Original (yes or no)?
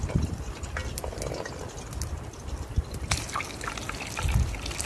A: yes